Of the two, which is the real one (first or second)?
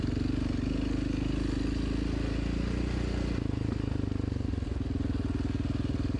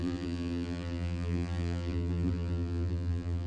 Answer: first